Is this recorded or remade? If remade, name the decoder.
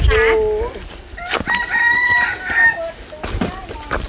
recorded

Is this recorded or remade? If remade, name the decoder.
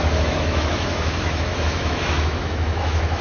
remade, autoencoder, DAC-VAE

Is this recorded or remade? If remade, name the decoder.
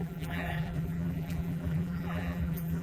remade, vocoder, BigVGAN v2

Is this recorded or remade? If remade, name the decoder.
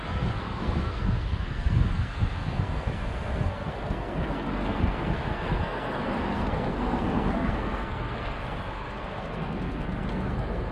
remade, codec, SNAC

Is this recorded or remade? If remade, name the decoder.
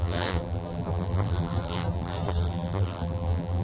remade, vocoder, BigVGAN v2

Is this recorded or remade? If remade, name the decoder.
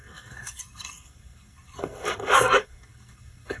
remade, codec, SNAC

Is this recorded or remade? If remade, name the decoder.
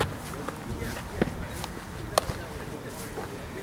recorded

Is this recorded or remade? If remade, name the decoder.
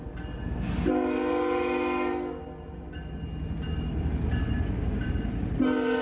recorded